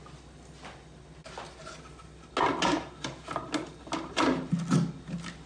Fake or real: real